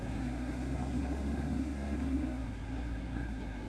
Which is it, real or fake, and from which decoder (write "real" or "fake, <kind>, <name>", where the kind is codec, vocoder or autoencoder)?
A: fake, codec, SNAC